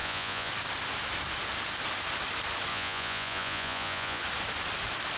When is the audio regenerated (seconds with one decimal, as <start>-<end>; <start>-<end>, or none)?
0.0-0.5; 2.7-4.2

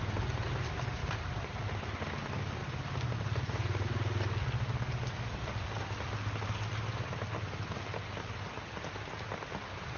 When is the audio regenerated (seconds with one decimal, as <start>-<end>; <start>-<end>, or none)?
1.0-2.0

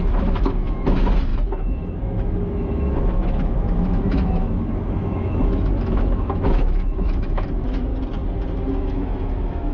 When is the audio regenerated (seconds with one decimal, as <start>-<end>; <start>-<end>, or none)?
0.0-7.9; 8.7-9.7

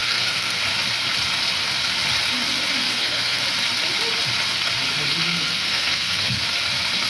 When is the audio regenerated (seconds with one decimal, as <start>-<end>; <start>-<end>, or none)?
0.0-0.6; 2.8-3.4; 5.2-6.4